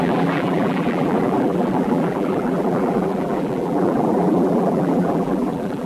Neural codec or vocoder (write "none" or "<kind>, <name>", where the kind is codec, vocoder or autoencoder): vocoder, BigVGAN v2